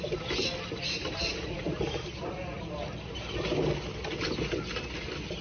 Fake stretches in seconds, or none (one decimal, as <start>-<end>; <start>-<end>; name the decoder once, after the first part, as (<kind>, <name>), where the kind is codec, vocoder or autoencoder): none